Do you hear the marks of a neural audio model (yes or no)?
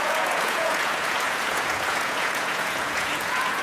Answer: yes